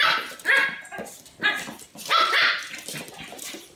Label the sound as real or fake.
real